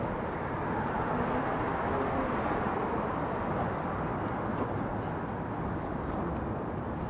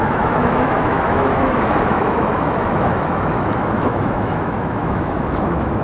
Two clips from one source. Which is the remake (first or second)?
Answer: second